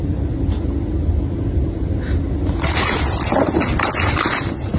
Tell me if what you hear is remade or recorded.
recorded